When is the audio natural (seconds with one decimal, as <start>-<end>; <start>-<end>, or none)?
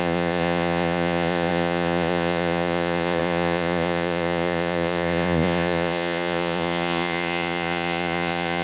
none